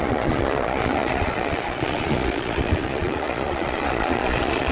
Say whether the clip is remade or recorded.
remade